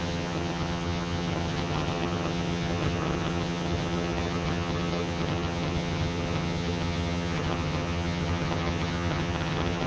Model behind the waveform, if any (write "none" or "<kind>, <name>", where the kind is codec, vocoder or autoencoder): vocoder, HiFi-GAN